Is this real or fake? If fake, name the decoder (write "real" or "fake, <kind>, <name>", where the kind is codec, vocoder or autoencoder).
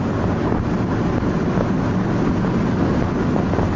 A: real